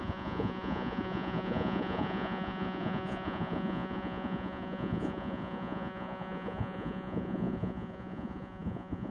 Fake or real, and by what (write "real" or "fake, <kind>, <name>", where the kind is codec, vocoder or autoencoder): fake, vocoder, Vocos